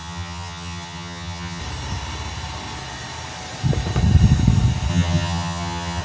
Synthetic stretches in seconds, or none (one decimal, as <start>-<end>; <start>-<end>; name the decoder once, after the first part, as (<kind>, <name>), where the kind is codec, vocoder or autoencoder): 0.0-1.6 (vocoder, HiFi-GAN); 4.9-6.0

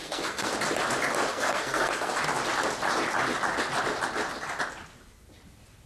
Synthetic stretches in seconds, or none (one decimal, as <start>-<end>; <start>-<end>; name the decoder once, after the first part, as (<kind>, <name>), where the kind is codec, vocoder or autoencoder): 0.0-0.5 (codec, SNAC); 1.3-2.2

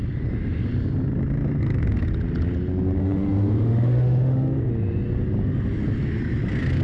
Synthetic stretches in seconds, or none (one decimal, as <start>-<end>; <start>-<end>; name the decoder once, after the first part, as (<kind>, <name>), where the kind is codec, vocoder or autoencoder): 3.0-4.7 (autoencoder, DAC-VAE)

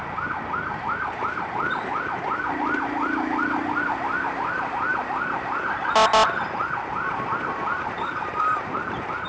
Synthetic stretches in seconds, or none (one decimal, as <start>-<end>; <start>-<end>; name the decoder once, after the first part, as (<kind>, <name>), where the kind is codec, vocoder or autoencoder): none

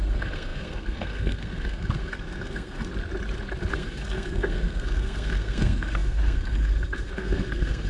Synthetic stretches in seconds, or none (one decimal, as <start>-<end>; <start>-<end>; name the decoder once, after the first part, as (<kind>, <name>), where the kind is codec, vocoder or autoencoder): 0.0-2.9 (codec, SNAC); 3.7-7.9

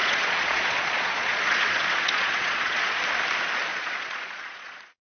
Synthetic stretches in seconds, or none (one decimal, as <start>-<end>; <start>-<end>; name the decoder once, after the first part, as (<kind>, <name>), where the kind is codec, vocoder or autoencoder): 0.0-3.0 (vocoder, Vocos); 3.7-5.0

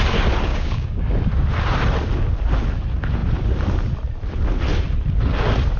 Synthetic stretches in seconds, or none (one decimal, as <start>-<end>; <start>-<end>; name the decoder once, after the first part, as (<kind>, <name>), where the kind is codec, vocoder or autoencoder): 0.5-1.0 (codec, DAC)

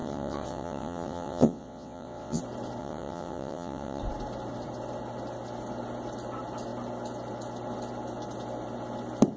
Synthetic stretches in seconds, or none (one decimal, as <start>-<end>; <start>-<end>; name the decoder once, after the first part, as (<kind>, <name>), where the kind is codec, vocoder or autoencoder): 0.0-2.4 (vocoder, WaveNeXt); 2.8-4.0